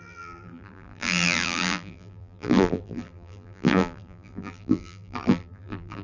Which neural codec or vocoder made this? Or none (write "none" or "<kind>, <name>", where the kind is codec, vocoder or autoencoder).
vocoder, BigVGAN v2